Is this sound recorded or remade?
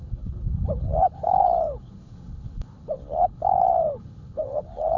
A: remade